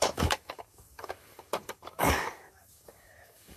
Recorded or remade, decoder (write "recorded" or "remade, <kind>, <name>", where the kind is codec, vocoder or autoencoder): remade, codec, DAC